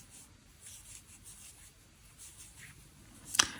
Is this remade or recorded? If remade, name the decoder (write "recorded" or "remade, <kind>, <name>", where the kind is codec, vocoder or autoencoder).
recorded